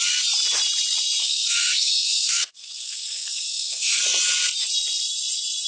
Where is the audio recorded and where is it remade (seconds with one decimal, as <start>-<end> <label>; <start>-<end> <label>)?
0.0-1.2 recorded; 1.2-4.0 remade; 4.0-5.7 recorded